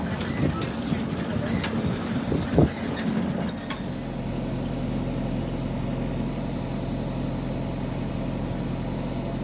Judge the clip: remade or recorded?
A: recorded